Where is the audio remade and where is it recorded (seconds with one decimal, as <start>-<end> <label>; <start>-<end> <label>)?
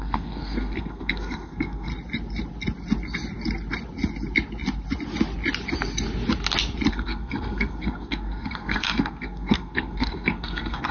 0.0-1.9 remade; 1.9-6.9 recorded; 6.9-10.9 remade